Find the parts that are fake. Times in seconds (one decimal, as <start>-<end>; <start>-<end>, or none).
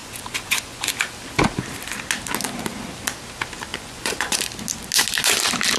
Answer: 0.0-0.9; 3.7-4.4